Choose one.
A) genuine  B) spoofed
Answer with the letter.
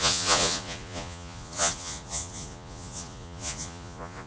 B